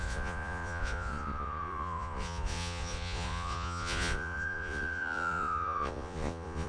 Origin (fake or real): fake